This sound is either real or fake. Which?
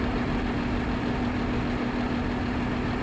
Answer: real